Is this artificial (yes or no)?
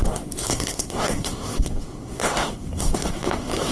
yes